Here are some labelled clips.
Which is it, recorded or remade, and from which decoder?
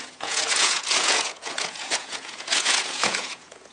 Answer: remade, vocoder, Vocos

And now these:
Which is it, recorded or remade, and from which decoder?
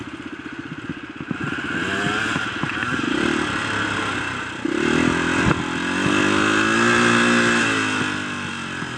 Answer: recorded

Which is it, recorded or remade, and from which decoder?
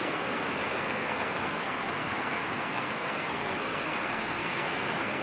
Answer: remade, codec, SNAC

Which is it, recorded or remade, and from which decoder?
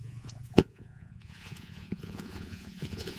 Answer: remade, vocoder, Vocos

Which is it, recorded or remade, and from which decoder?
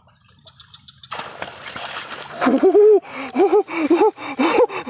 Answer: recorded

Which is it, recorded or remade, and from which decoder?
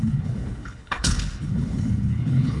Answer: remade, codec, HILCodec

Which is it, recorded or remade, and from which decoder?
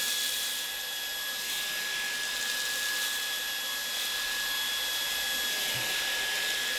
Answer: recorded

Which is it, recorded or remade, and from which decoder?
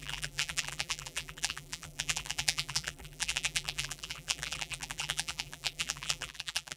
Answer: remade, vocoder, BigVGAN v2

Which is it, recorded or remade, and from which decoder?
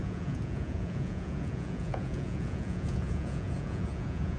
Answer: remade, vocoder, Vocos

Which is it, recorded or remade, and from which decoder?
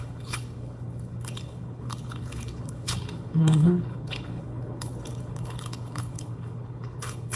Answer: remade, codec, HILCodec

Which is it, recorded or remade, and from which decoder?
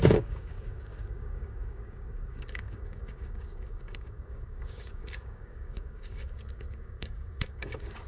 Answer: remade, codec, DAC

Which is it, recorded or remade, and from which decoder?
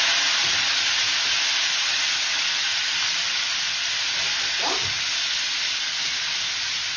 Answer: recorded